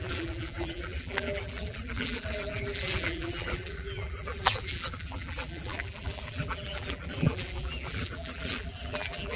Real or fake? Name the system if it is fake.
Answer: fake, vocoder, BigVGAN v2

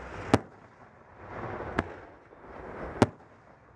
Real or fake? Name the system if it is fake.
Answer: real